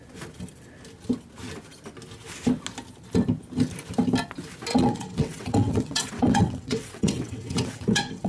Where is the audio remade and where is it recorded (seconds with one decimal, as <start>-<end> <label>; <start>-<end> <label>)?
0.0-4.7 recorded; 4.7-8.3 remade